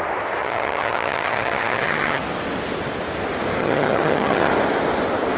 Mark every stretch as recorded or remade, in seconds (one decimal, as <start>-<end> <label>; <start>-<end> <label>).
0.0-0.4 recorded; 0.4-2.2 remade; 2.2-3.6 recorded; 3.6-4.5 remade; 4.5-5.4 recorded